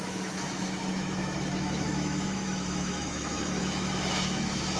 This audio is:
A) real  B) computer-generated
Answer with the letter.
B